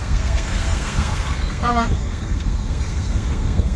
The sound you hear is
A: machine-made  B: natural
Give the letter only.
A